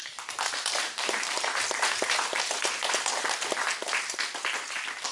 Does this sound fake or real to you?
fake